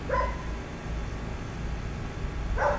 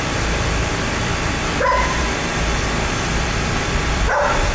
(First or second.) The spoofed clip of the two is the second